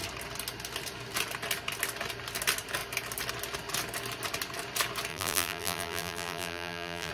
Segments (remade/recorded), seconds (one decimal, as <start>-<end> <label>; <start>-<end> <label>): 0.0-5.1 recorded; 5.1-7.1 remade